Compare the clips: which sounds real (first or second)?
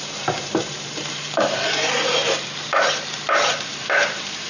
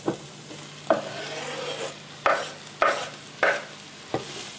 second